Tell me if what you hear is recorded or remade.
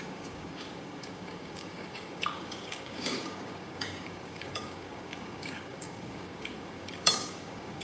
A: remade